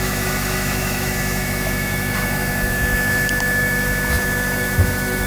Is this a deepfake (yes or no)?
yes